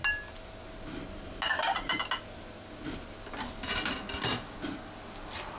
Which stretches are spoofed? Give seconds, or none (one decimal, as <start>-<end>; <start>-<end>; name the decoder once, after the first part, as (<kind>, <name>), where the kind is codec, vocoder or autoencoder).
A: none